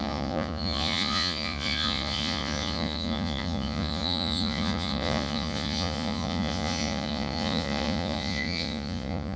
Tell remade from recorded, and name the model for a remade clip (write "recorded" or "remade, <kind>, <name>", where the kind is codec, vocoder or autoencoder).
remade, vocoder, Vocos